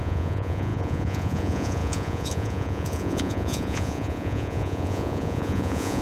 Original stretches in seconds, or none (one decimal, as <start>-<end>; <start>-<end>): none